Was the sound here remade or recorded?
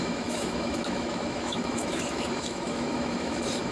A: remade